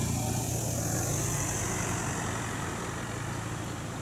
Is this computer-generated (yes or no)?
no